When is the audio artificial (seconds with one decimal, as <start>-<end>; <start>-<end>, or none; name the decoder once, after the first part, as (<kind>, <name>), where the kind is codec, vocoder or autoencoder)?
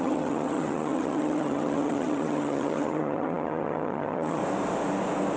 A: 0.0-4.4 (vocoder, HiFi-GAN)